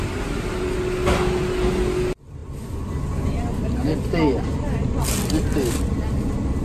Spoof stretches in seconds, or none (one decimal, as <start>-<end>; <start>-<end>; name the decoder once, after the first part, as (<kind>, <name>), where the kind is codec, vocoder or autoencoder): none